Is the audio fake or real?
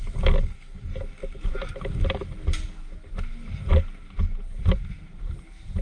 real